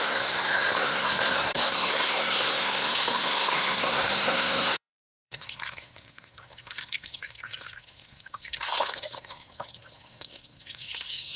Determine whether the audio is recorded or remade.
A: remade